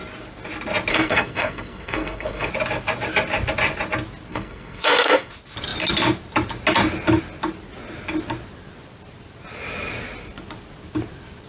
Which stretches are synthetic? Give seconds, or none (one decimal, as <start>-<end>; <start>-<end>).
0.9-2.5; 4.3-5.3